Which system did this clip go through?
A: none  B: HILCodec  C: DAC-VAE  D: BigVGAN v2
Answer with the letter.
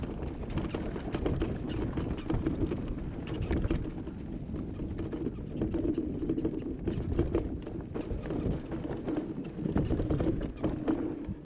A